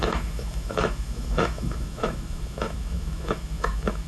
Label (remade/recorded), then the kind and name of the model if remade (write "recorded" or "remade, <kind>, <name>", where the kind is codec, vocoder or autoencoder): remade, autoencoder, DAC-VAE